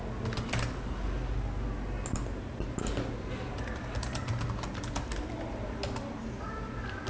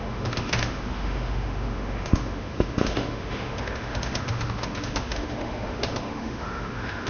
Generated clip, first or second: second